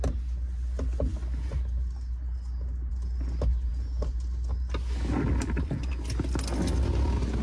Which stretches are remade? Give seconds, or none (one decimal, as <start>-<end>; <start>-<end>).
none